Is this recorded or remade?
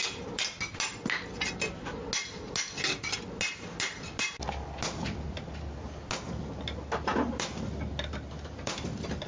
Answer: recorded